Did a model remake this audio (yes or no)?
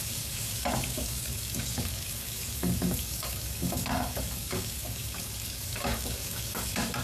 yes